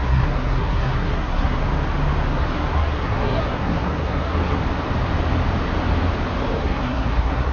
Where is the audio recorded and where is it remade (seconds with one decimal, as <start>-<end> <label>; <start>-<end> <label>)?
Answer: 0.0-1.6 remade; 1.6-2.3 recorded; 2.3-4.6 remade; 4.6-6.6 recorded; 6.6-7.5 remade